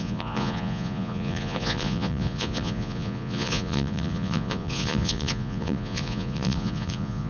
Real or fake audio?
fake